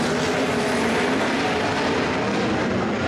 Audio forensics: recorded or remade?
recorded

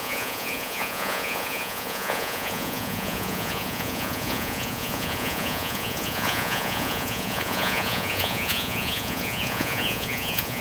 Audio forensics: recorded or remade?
remade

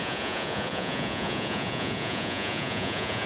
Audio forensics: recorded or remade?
remade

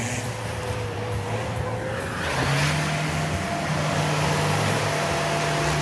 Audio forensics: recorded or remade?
recorded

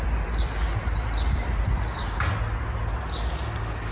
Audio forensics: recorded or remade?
recorded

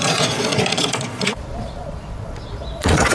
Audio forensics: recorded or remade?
remade